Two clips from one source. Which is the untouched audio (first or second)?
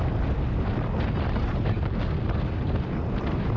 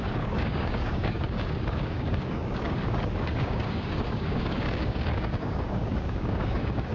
first